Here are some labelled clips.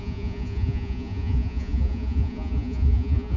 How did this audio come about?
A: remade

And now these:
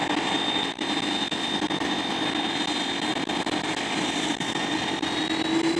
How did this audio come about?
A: recorded